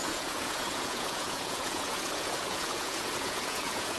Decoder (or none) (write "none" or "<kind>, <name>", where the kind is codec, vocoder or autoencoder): vocoder, Vocos